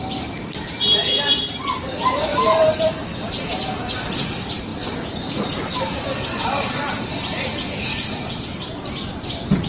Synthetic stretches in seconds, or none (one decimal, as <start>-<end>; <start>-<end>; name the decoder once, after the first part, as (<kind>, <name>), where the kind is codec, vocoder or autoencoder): 0.0-9.7 (vocoder, BigVGAN v2)